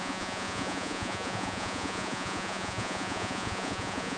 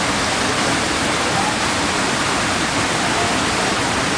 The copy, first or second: first